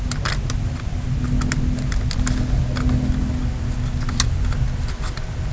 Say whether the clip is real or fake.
real